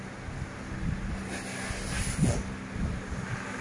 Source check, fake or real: real